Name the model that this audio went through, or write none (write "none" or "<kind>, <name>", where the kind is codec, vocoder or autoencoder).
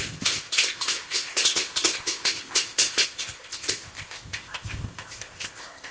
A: codec, ZipCodec